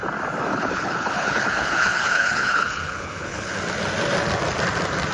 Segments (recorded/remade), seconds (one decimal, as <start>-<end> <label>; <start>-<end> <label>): 0.0-0.5 recorded; 0.5-3.6 remade; 3.6-5.1 recorded